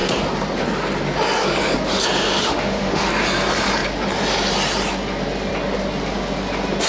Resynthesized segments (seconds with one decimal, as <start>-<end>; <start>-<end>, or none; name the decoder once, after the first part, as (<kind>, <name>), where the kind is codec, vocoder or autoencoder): 2.4-3.1 (autoencoder, DAC-VAE)